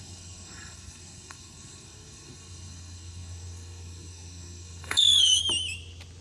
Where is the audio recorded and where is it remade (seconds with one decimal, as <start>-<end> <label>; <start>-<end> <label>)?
0.0-5.4 remade; 5.4-6.2 recorded